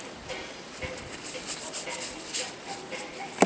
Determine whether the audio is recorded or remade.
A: recorded